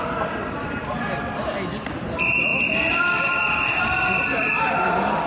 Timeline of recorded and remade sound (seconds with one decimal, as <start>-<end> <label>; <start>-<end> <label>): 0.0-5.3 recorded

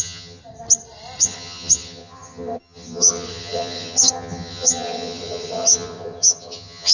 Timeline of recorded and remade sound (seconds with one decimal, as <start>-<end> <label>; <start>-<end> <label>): 0.0-0.4 remade; 0.4-1.2 recorded; 1.2-6.9 remade

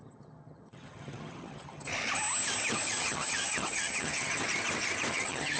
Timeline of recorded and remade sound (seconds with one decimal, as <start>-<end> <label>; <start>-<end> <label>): 0.0-1.9 remade; 1.9-3.0 recorded; 3.0-4.4 remade; 4.4-5.1 recorded; 5.1-5.6 remade

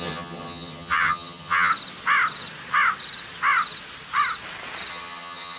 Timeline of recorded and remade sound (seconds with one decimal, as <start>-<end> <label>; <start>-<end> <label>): 0.0-1.7 remade; 1.7-4.9 recorded; 4.9-5.6 remade

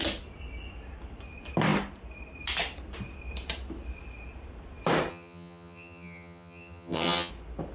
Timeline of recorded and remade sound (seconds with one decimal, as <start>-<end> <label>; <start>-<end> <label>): 0.0-5.1 recorded; 5.1-7.3 remade; 7.3-7.7 recorded

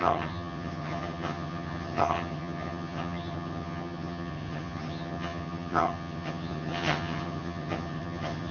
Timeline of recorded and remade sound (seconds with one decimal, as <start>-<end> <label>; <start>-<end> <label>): 0.0-8.5 remade

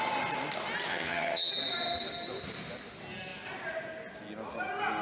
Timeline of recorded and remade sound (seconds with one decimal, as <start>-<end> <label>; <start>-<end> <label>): 0.0-0.9 recorded; 0.9-1.5 remade; 1.5-5.0 recorded